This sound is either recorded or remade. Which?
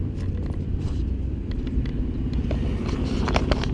recorded